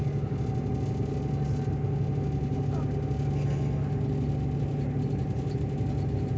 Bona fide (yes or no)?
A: yes